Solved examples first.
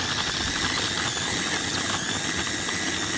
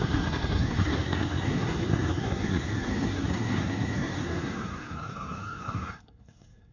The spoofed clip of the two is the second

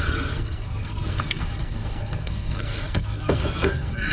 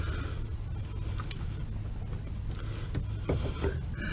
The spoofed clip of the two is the first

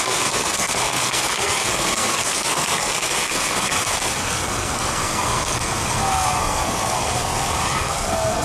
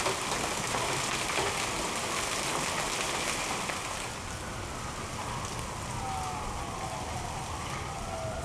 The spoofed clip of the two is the first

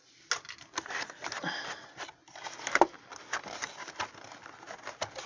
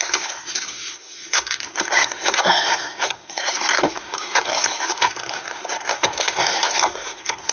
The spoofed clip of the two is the second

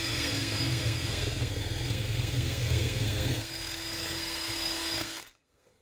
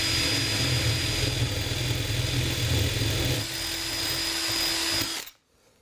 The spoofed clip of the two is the first